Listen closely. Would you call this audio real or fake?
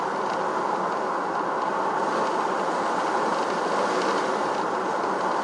real